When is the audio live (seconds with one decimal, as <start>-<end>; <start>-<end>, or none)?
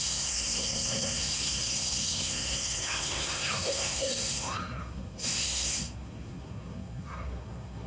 none